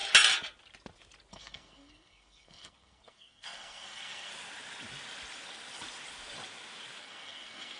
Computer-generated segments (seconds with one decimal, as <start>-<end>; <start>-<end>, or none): 1.3-4.3; 7.0-7.8